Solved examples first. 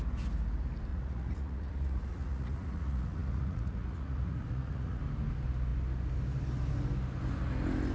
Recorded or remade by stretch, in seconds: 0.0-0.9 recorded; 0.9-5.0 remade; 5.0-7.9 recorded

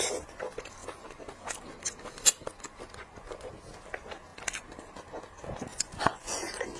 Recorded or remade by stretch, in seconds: 0.0-3.0 recorded; 3.0-3.5 remade; 3.5-5.7 recorded; 5.7-6.8 remade

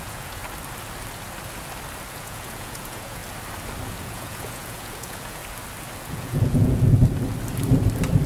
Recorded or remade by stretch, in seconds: 0.0-0.4 remade; 0.4-2.1 recorded; 2.1-3.2 remade; 3.2-3.9 recorded; 3.9-5.4 remade; 5.4-6.0 recorded; 6.0-7.0 remade; 7.0-8.3 recorded

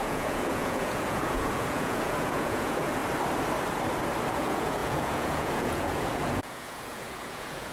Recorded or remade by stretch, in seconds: 0.0-3.0 remade; 3.0-4.3 recorded; 4.3-7.7 remade

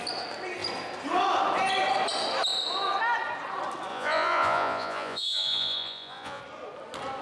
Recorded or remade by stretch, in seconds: 0.0-3.9 recorded; 3.9-6.4 remade; 6.4-7.2 recorded

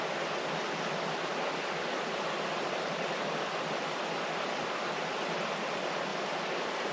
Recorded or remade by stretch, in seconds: 0.0-6.9 recorded